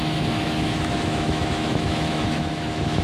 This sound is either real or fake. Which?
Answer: fake